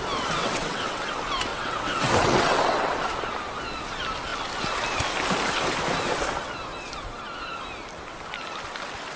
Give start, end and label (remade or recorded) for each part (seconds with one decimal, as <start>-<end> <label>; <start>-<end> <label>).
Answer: 0.0-0.4 recorded; 0.4-1.1 remade; 1.1-1.5 recorded; 1.5-2.9 remade; 2.9-9.2 recorded